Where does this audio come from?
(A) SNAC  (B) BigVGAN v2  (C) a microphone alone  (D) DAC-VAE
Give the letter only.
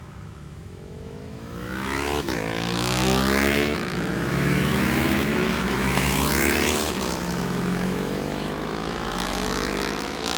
D